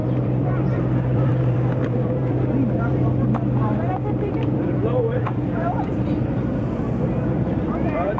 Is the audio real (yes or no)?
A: no